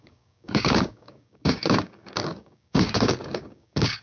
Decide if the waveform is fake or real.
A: fake